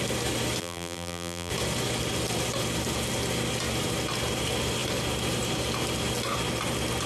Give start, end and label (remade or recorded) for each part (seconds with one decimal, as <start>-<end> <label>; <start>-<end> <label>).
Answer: 0.0-0.6 recorded; 0.6-1.5 remade; 1.5-7.1 recorded

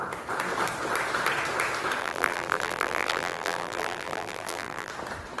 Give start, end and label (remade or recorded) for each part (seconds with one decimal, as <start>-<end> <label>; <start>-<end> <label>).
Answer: 0.0-2.0 recorded; 2.0-4.9 remade; 4.9-5.4 recorded